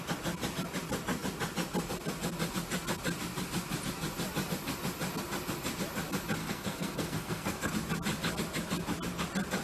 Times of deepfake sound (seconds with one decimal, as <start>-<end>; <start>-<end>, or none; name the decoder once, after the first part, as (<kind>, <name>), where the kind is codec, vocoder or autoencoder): 6.4-7.7 (codec, SNAC)